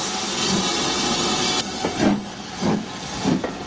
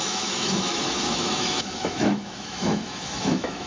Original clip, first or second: first